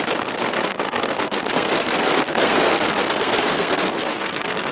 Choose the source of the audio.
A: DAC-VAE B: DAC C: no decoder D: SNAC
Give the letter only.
D